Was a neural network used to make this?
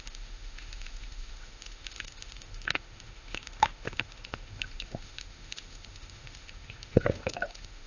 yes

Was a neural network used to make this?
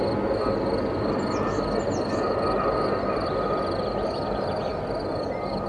no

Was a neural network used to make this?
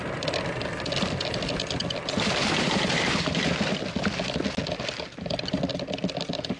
no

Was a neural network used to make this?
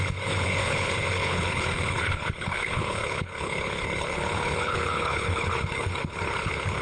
yes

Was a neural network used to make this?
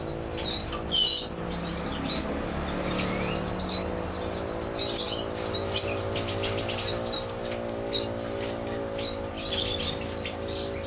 no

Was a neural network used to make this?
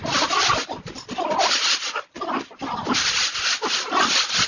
no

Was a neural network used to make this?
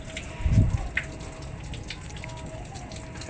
no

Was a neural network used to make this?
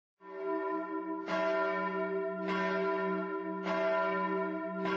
no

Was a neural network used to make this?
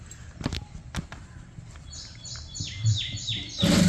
no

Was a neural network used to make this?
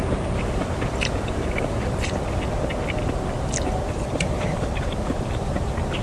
no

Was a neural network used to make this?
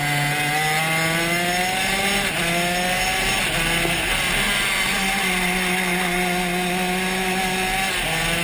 no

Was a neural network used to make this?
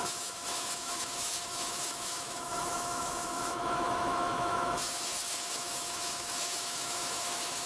yes